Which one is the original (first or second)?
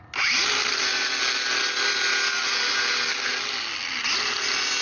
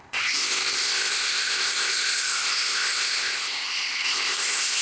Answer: first